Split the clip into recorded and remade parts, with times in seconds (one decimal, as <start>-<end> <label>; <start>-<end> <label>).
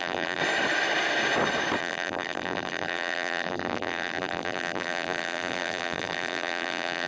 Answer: 0.0-0.4 remade; 0.4-1.8 recorded; 1.8-7.1 remade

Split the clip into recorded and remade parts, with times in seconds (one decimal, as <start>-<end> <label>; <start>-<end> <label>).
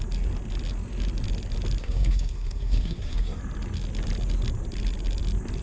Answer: 0.0-1.8 recorded; 1.8-3.4 remade; 3.4-5.6 recorded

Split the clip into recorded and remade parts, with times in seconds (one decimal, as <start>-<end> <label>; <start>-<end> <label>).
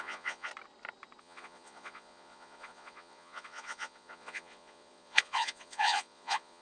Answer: 0.0-0.5 remade; 0.5-1.2 recorded; 1.2-6.6 remade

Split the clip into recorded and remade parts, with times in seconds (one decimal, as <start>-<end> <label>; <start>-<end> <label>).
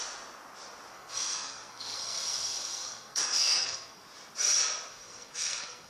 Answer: 0.0-0.9 recorded; 0.9-4.0 remade; 4.0-4.9 recorded; 4.9-5.9 remade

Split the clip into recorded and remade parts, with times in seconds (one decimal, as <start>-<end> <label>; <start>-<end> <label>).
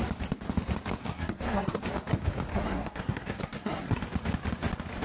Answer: 0.0-1.0 recorded; 1.0-1.8 remade; 1.8-2.5 recorded; 2.5-4.0 remade; 4.0-5.0 recorded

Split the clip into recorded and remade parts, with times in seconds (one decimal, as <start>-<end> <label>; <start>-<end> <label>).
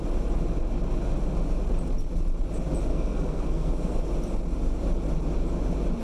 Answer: 0.0-2.9 recorded; 2.9-4.0 remade; 4.0-6.0 recorded